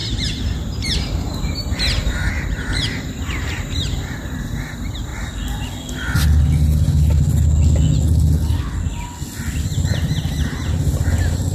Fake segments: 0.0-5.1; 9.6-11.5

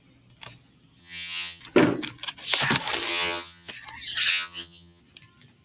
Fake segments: 1.0-1.6; 3.1-3.7; 4.3-5.0

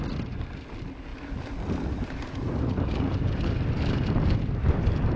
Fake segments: none

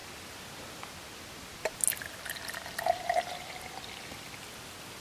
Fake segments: none

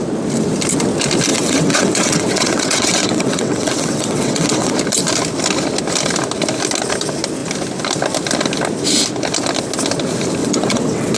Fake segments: 1.3-4.7; 10.4-11.2

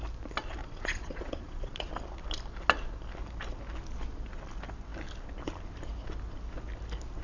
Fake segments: 0.6-1.9